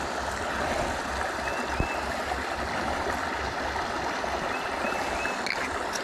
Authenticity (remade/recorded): recorded